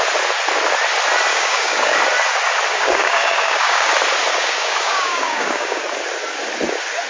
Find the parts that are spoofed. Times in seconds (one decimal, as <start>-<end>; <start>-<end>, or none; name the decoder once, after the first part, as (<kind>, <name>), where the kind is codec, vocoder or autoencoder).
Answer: 1.3-2.0 (codec, DAC); 2.7-3.9; 4.3-5.8